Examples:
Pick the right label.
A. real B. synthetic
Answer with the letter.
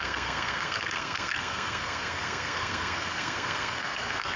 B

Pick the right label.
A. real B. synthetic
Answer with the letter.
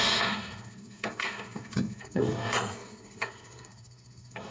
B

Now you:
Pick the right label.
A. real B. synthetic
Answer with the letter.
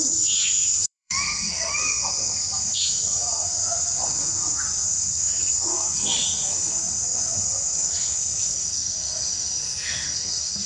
B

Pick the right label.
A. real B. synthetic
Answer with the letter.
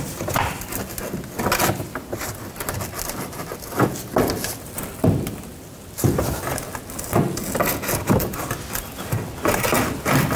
A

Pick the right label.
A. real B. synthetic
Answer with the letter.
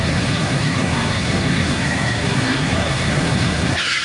B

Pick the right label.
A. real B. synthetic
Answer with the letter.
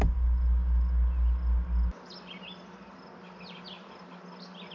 A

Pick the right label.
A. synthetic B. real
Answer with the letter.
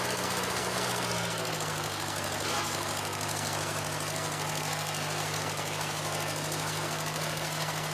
A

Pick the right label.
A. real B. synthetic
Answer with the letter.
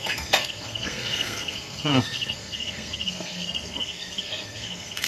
B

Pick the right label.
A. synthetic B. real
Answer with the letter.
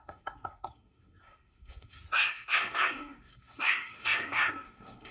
A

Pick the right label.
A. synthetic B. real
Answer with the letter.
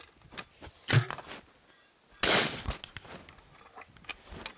B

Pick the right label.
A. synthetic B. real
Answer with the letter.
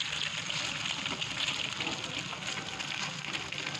B